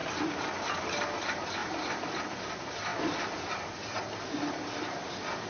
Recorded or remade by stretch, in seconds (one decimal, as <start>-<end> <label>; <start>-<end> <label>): 0.0-5.5 recorded